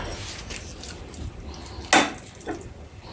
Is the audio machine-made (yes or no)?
no